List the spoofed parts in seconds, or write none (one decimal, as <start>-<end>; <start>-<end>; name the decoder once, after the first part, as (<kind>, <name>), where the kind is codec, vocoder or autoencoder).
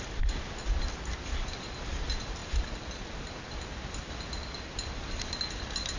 none